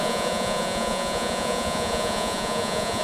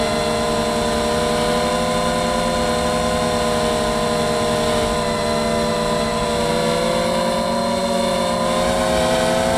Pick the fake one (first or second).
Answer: first